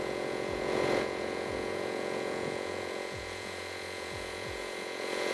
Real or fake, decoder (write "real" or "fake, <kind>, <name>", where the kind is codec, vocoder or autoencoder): fake, vocoder, Vocos